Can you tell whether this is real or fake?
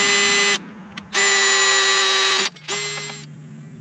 real